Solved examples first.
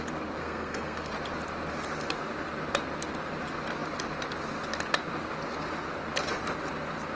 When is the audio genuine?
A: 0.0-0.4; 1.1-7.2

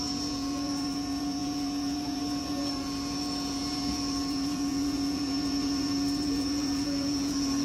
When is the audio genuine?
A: none

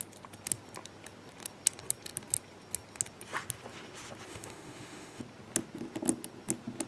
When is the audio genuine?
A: 0.0-4.3; 5.2-6.9

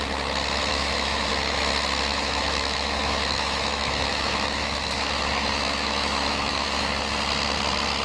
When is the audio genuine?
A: 0.0-0.7; 1.3-2.1; 6.9-8.0

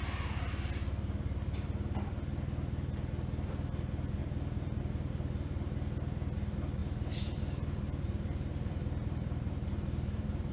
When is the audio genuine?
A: 0.0-4.2; 4.8-6.8